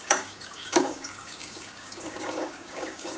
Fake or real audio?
fake